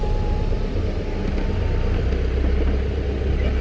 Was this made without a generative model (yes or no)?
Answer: yes